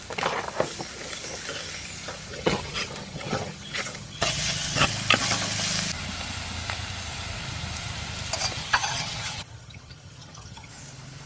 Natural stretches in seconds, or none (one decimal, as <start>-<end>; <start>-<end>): 0.0-2.3; 4.9-8.6; 10.7-11.3